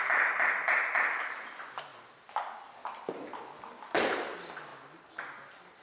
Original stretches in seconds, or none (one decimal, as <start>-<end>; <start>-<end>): 0.0-5.8